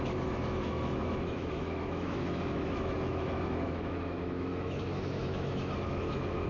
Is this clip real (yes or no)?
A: no